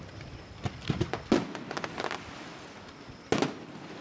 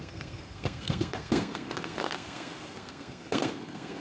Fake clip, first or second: second